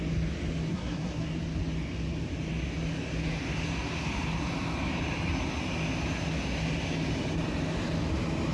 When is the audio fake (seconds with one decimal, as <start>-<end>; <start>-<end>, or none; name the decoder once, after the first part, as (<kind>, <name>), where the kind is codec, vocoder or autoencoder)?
0.7-1.3 (codec, SNAC)